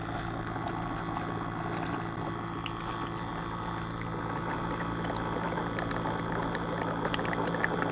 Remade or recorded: recorded